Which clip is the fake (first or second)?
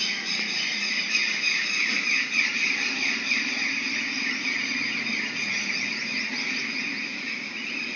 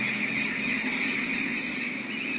first